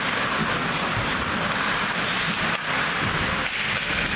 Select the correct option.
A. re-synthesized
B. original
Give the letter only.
B